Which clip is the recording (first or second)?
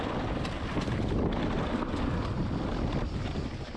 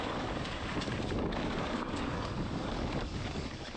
first